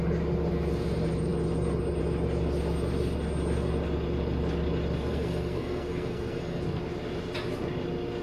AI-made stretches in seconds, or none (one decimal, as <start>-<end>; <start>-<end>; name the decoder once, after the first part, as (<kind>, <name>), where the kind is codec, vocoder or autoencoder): 5.1-6.6 (codec, SNAC)